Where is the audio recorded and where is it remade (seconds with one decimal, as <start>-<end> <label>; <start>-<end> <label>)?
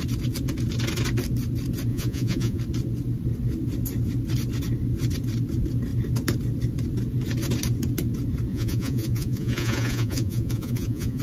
0.0-1.9 recorded; 1.9-2.6 remade; 2.6-8.5 recorded; 8.5-11.2 remade